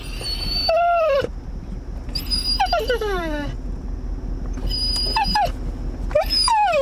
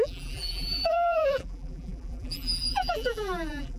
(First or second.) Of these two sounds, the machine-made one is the second